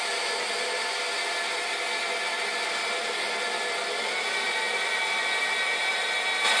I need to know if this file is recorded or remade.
recorded